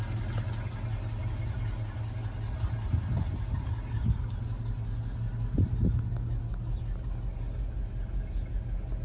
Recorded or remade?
recorded